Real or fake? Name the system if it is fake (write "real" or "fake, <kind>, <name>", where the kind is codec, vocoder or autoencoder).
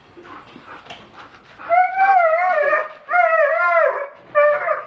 real